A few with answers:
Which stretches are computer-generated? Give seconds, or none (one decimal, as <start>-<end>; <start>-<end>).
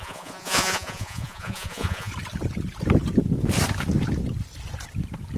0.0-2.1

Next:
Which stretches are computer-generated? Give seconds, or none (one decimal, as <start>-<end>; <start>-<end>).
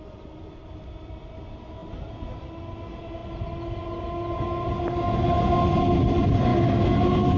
none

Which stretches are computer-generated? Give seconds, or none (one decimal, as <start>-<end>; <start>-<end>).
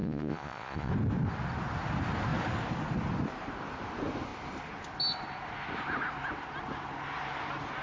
0.0-0.9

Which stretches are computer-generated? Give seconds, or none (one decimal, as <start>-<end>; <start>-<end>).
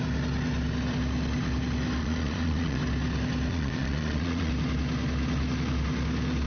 2.0-2.8; 3.5-4.5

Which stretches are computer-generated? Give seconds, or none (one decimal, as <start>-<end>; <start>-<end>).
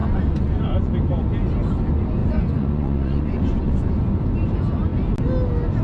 0.0-0.9; 2.2-3.9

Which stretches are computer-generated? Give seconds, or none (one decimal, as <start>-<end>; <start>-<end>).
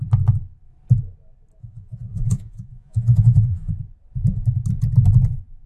1.6-3.7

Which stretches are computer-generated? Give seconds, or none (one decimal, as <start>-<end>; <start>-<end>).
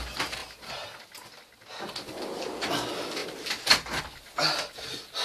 none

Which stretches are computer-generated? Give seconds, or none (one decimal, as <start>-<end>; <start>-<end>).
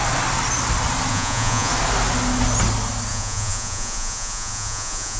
1.1-1.7; 3.1-5.2